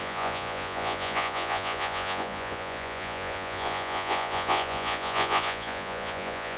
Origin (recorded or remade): remade